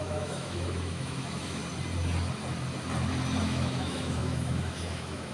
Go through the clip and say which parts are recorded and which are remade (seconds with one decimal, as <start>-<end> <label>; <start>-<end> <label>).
0.0-1.6 remade; 1.6-3.4 recorded; 3.4-5.3 remade